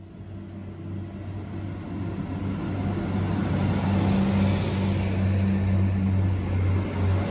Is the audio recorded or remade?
recorded